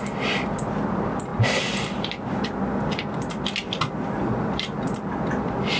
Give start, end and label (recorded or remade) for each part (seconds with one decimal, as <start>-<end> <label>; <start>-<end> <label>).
0.0-5.8 recorded